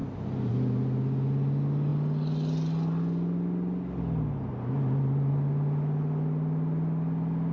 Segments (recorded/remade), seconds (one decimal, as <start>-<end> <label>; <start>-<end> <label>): 0.0-7.5 recorded